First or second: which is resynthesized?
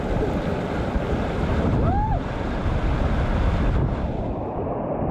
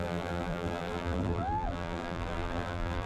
second